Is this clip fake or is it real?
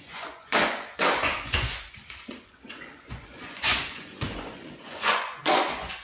fake